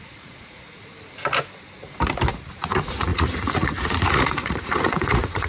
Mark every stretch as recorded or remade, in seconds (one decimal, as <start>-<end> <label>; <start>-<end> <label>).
0.0-0.9 remade; 0.9-2.5 recorded; 2.5-5.5 remade